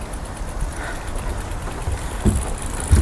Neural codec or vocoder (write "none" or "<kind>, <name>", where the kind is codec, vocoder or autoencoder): none